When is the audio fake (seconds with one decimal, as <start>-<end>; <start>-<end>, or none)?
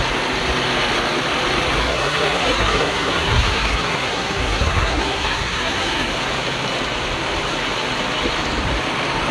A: 1.8-6.1